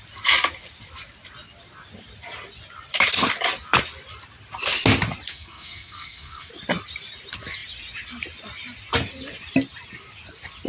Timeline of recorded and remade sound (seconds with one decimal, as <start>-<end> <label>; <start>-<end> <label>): 0.0-5.3 recorded; 5.3-6.5 remade; 6.5-10.7 recorded